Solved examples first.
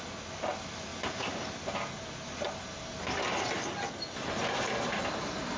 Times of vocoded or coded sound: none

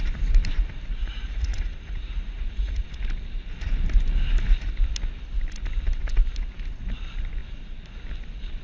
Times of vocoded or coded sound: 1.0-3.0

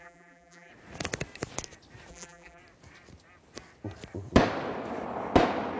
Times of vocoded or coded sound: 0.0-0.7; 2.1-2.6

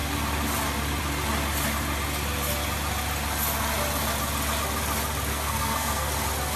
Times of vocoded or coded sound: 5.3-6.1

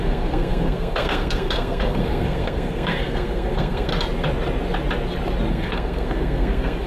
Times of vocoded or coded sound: 0.0-3.9; 5.5-6.9

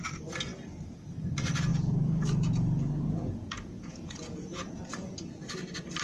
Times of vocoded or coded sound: 1.7-5.3